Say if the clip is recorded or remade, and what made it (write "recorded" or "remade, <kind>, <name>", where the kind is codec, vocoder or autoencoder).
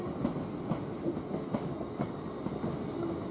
recorded